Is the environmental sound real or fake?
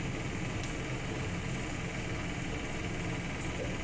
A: real